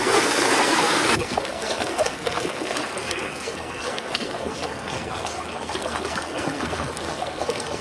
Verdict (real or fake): fake